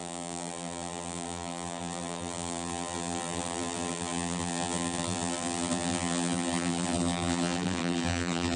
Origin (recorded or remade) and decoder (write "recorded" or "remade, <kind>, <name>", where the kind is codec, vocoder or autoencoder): remade, vocoder, BigVGAN v2